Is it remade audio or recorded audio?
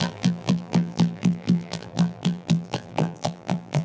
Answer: remade